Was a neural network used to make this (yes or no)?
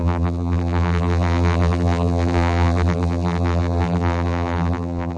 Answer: yes